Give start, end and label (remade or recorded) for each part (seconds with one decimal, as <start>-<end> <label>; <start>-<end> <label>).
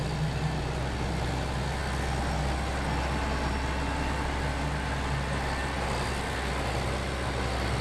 0.0-7.8 recorded